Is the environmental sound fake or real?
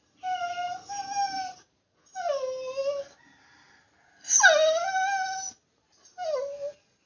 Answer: real